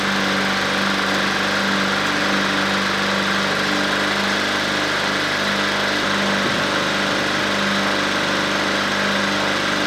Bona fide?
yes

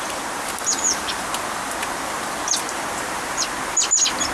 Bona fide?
yes